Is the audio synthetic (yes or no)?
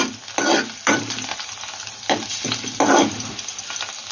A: no